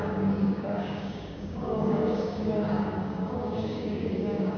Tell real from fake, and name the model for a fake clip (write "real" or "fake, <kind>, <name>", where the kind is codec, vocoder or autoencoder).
fake, codec, DAC